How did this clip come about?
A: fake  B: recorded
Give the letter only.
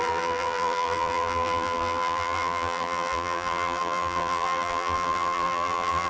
A